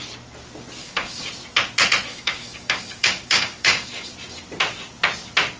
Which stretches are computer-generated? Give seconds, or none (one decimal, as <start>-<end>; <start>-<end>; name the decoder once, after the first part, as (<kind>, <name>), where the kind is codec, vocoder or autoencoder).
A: 0.8-1.3 (codec, DAC); 2.1-4.1